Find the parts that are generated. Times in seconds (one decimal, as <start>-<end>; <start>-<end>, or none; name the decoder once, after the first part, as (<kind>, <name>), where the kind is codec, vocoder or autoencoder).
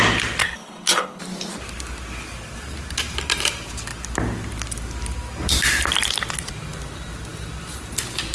0.4-1.2 (codec, HILCodec)